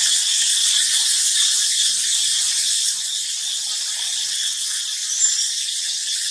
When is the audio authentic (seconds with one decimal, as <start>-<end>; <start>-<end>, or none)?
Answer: 0.5-4.3; 4.8-5.8